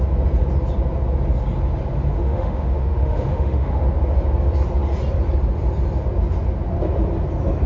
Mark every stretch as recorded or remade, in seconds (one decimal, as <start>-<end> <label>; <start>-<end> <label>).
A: 0.0-2.1 recorded; 2.1-3.8 remade; 3.8-7.7 recorded